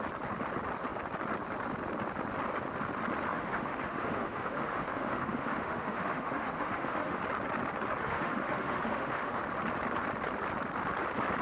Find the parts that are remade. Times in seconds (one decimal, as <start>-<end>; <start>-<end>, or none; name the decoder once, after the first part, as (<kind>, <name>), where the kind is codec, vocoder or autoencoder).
3.3-7.2 (autoencoder, DAC-VAE); 8.0-9.4

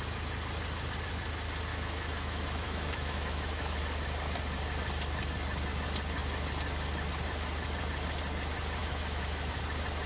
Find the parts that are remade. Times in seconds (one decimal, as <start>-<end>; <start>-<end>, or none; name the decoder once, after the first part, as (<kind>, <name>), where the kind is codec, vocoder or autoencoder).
1.7-3.8 (autoencoder, DAC-VAE); 8.8-9.6

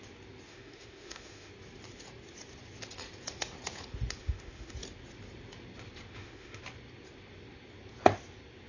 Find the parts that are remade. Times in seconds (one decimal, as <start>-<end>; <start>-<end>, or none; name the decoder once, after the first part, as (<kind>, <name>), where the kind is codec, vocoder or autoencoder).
0.5-1.5 (autoencoder, DAC-VAE); 4.2-4.7; 6.1-6.6